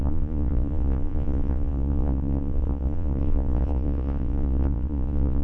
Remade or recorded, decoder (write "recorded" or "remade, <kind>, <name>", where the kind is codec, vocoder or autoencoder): remade, vocoder, Vocos